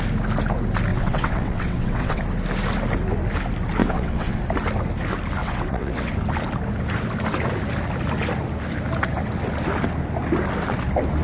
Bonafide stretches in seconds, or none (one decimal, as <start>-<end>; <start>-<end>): 0.0-0.9; 2.2-3.8; 4.4-5.4; 6.1-11.2